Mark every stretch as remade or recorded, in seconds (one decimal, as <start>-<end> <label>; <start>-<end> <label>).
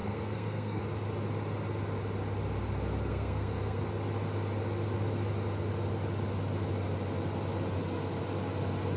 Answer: 0.0-0.8 remade; 0.8-3.1 recorded; 3.1-3.8 remade; 3.8-9.0 recorded